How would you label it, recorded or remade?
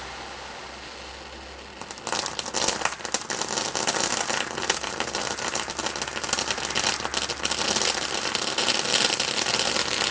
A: recorded